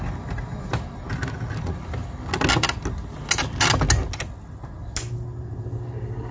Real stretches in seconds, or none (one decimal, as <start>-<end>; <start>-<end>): 0.0-6.3